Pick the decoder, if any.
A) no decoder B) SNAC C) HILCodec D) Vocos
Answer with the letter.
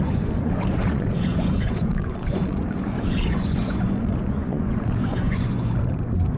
D